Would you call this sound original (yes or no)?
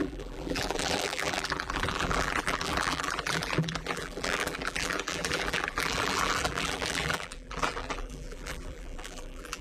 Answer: no